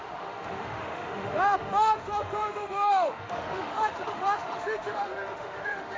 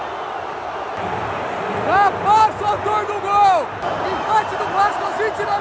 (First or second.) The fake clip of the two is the first